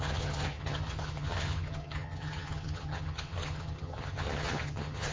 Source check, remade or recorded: remade